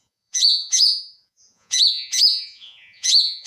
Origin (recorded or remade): remade